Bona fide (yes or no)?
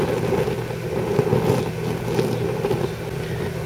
yes